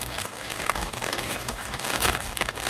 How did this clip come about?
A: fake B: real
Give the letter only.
A